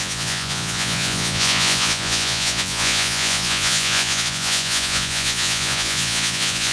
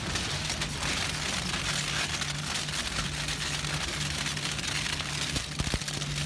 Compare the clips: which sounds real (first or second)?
second